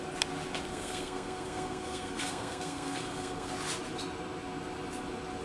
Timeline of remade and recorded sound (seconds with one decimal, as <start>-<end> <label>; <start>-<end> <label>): 0.0-0.7 recorded; 0.7-3.5 remade; 3.5-5.4 recorded

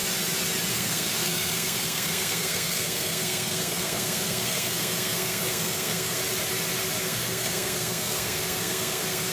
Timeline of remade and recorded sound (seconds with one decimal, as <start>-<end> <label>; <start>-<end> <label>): 0.0-0.7 recorded; 0.7-6.2 remade; 6.2-7.0 recorded; 7.0-9.3 remade